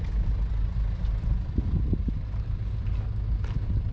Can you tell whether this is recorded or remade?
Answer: recorded